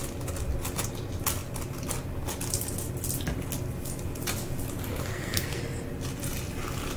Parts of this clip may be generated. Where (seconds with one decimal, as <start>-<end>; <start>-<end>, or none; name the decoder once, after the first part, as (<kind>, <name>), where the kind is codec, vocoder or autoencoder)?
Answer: 4.9-5.6 (codec, SNAC)